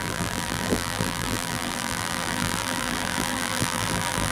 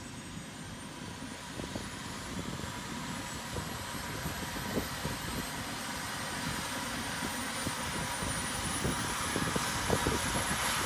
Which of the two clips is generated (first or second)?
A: first